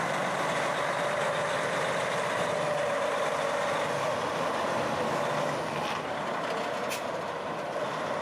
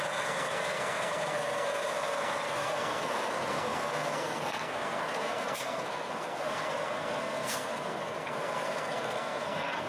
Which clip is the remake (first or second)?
second